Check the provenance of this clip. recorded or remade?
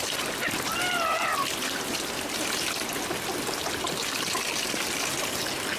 recorded